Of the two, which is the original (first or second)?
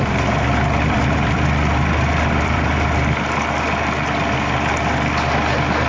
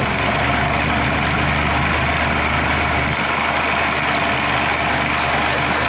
second